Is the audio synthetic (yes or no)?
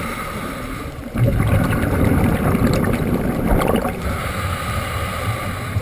yes